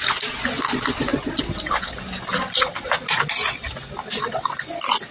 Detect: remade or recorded recorded